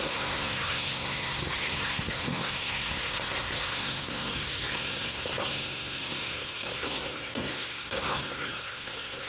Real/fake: fake